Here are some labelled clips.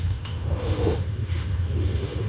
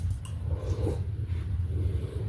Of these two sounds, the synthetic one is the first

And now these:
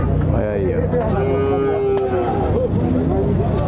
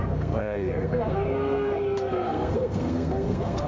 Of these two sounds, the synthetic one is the second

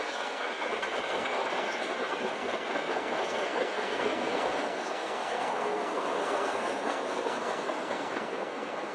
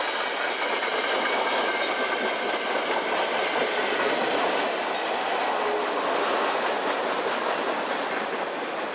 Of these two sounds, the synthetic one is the first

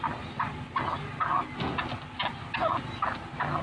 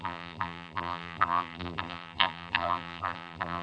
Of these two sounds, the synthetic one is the second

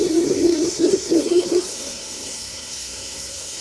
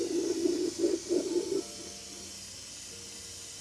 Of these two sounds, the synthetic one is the first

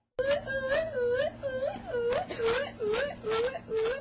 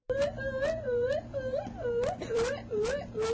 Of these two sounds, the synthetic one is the second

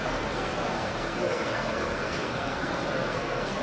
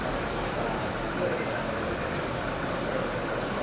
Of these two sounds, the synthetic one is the first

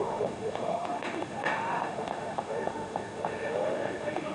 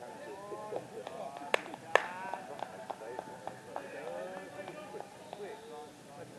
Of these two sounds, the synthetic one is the first